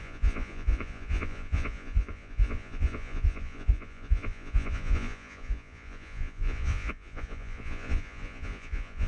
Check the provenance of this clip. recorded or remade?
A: remade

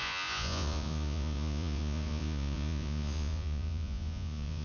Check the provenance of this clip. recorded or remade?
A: remade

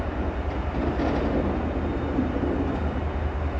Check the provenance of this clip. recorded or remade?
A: recorded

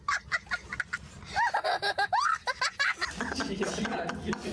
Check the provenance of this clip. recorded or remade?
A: recorded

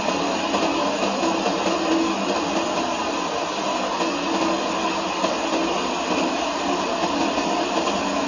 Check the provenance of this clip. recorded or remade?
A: recorded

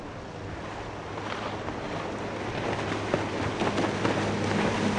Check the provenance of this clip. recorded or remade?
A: recorded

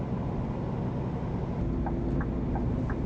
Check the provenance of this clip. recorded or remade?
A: recorded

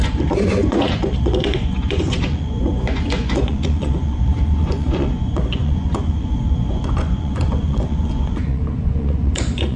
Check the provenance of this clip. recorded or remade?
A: remade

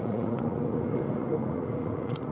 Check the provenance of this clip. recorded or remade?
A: remade